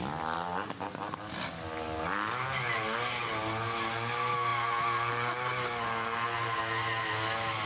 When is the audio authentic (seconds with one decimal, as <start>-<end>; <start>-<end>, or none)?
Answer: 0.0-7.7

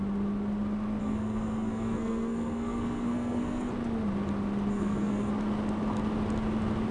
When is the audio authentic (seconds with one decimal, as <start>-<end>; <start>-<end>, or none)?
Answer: 0.0-1.0; 3.7-4.7; 5.3-6.9

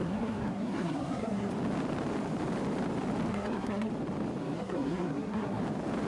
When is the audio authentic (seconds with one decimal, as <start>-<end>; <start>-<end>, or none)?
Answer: 1.5-3.3; 3.9-4.4; 5.6-6.1

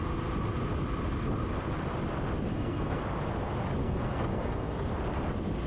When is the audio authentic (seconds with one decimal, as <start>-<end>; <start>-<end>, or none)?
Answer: 0.0-2.5; 3.0-3.8; 4.9-5.7

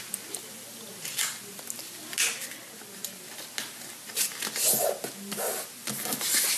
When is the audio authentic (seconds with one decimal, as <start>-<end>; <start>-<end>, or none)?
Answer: 0.0-6.6

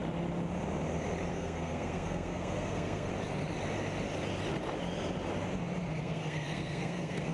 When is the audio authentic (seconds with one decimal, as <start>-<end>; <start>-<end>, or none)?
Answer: 0.0-1.3; 3.1-6.0

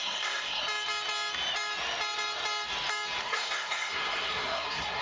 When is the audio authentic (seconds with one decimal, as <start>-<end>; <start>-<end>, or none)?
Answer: 0.6-3.2